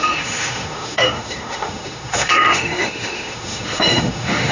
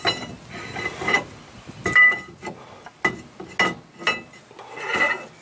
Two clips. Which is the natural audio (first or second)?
second